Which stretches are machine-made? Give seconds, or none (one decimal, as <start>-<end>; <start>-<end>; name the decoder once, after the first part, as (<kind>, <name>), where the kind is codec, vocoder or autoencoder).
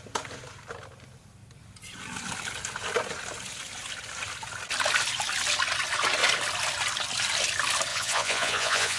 7.9-9.0 (vocoder, Vocos)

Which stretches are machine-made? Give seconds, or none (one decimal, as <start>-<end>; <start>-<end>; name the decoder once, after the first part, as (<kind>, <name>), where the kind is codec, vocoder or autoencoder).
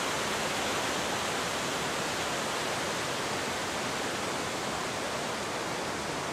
none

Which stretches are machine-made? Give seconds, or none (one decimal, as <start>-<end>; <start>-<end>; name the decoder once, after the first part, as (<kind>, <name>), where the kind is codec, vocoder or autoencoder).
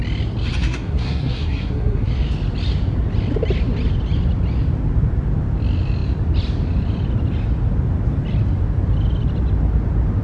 0.6-2.1 (codec, SNAC)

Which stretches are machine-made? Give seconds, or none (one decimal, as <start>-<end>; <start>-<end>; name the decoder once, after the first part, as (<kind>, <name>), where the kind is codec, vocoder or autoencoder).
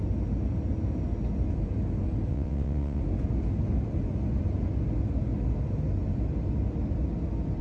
2.3-3.0 (vocoder, WaveNeXt)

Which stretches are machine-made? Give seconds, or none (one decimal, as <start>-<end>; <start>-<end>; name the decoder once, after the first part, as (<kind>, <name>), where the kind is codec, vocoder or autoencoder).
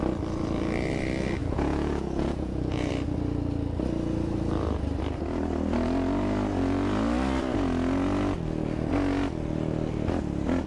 1.4-2.9 (vocoder, Vocos)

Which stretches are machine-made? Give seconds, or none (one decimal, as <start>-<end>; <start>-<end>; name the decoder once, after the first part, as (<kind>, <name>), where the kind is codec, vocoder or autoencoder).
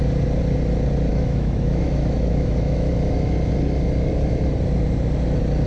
1.1-2.9 (autoencoder, DAC-VAE)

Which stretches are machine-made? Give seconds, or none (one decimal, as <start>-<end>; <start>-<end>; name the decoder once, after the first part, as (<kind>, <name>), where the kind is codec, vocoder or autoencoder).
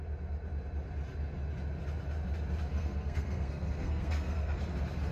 2.7-4.6 (codec, SNAC)